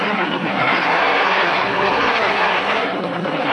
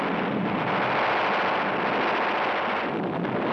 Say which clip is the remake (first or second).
first